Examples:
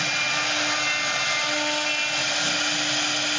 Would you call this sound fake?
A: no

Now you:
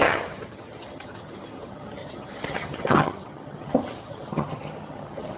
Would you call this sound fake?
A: yes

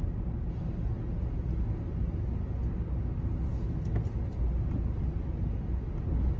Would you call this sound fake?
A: no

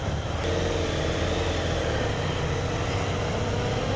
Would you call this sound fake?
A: no